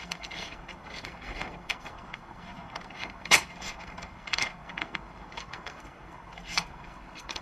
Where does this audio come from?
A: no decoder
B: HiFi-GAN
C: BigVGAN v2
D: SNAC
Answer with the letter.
D